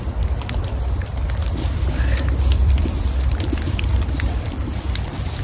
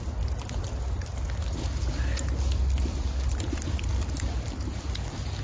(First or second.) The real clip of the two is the second